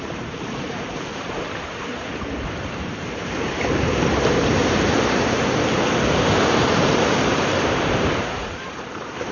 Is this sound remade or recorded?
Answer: remade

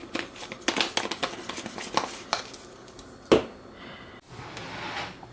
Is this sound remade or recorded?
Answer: recorded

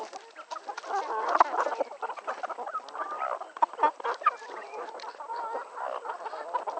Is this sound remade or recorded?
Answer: recorded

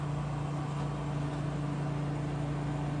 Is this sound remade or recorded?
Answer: recorded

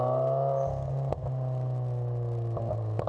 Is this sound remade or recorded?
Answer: recorded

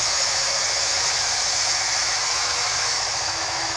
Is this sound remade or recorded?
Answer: remade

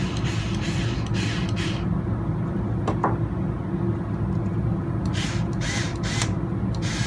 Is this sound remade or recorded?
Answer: recorded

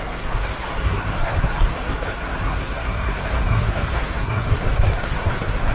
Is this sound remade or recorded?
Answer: remade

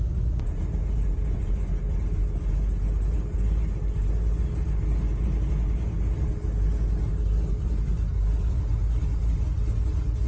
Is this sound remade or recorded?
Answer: recorded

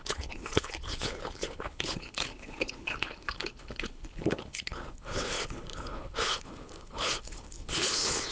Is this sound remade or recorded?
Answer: remade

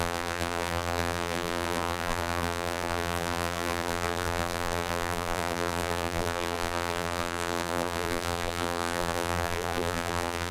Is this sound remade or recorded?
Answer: remade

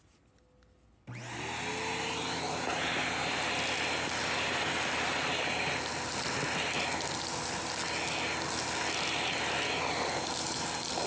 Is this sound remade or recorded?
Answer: recorded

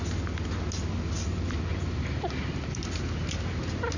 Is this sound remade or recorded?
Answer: recorded